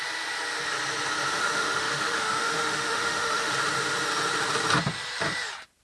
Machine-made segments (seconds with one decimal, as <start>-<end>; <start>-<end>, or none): 1.3-3.5